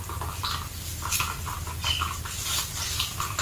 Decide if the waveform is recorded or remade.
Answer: recorded